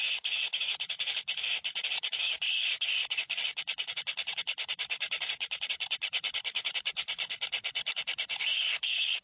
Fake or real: fake